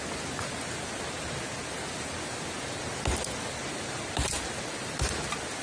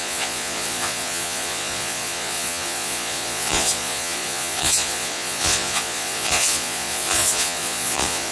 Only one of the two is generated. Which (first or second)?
second